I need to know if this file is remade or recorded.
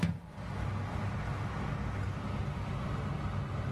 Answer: recorded